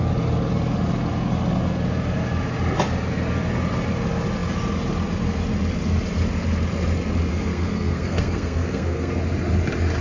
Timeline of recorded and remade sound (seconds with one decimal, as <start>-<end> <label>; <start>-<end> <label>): 0.0-7.3 recorded; 7.3-9.2 remade; 9.2-10.0 recorded